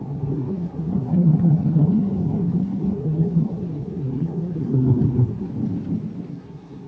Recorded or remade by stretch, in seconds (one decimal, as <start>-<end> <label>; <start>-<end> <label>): 0.0-5.5 remade; 5.5-6.3 recorded; 6.3-6.9 remade